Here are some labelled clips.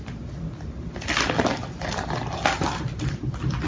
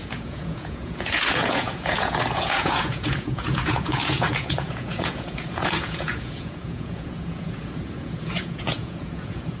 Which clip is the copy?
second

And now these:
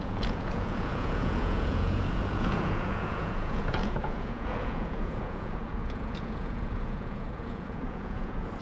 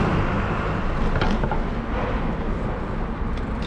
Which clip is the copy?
first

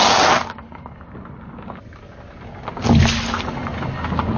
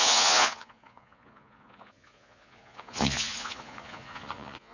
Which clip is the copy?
second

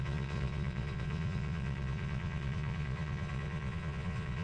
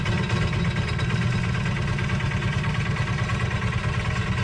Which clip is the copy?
first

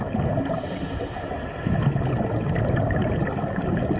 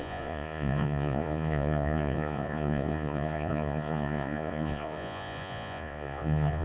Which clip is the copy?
second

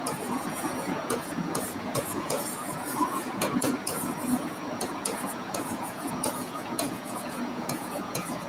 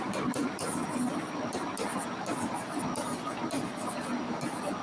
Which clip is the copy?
first